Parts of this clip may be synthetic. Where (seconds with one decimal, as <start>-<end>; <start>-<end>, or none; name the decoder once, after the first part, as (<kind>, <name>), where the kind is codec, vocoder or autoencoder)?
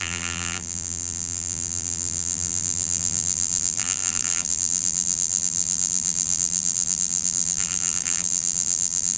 0.0-9.2 (vocoder, BigVGAN v2)